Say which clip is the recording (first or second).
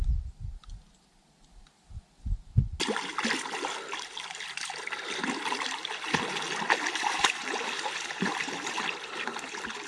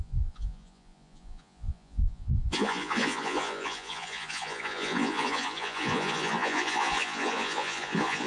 first